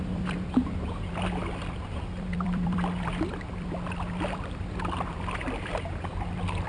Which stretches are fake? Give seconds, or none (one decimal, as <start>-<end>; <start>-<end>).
0.0-6.7